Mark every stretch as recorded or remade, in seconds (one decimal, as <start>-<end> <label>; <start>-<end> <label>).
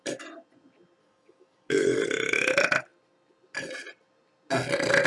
0.0-1.0 recorded; 1.0-2.0 remade; 2.0-5.1 recorded